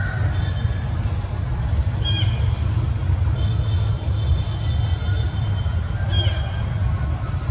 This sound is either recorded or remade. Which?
recorded